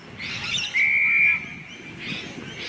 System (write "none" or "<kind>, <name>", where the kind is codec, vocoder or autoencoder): none